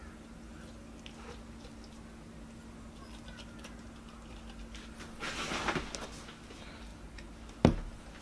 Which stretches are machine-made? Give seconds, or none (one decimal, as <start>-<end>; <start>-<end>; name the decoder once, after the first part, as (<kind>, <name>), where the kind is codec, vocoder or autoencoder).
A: none